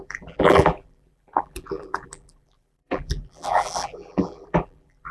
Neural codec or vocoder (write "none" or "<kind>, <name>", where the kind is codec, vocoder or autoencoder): vocoder, BigVGAN v2